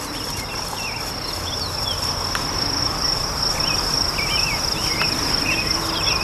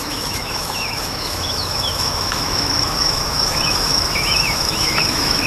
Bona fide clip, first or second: first